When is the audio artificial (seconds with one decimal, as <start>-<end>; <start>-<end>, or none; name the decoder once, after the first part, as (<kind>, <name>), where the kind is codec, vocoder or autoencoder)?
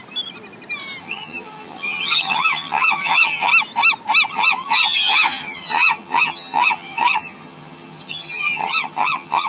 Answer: 1.0-3.5 (vocoder, HiFi-GAN); 4.3-9.5